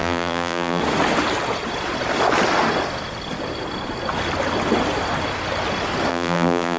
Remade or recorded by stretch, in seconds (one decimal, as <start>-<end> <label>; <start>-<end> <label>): 0.0-0.8 remade; 0.8-6.1 recorded; 6.1-6.8 remade